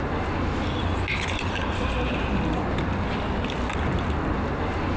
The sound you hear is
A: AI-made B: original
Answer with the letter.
B